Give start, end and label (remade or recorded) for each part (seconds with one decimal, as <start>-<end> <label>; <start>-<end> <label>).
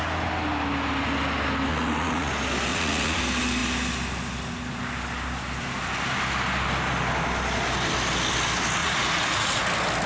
0.0-1.7 recorded; 1.7-2.3 remade; 2.3-2.7 recorded; 2.7-3.2 remade; 3.2-8.8 recorded; 8.8-9.6 remade; 9.6-10.1 recorded